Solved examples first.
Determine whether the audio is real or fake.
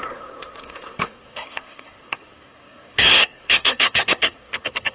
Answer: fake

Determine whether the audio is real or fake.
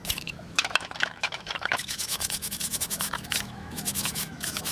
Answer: fake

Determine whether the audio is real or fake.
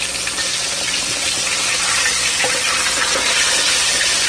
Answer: real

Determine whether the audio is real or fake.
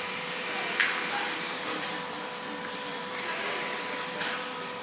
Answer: fake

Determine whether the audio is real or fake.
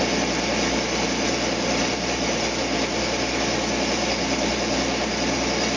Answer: real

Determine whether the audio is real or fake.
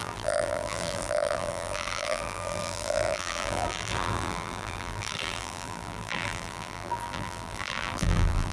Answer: fake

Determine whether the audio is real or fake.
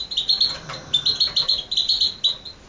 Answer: real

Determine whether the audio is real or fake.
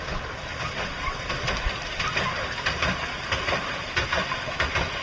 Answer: real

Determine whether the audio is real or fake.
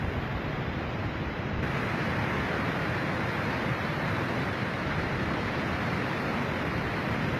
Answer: fake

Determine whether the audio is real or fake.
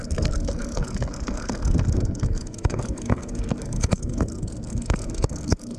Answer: fake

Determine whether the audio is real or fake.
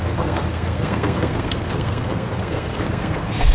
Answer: fake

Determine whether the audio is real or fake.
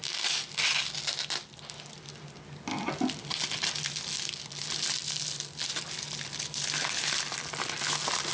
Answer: real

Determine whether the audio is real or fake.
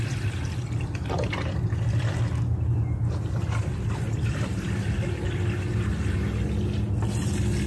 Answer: real